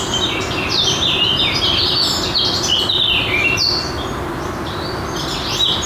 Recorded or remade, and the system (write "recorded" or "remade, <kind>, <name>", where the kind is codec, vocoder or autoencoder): recorded